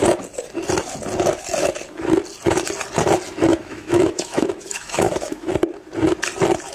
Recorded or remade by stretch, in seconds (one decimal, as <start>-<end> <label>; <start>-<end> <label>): 0.0-3.5 recorded; 3.5-5.5 remade; 5.5-6.7 recorded